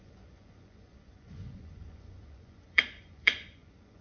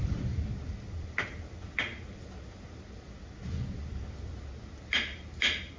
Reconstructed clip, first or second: first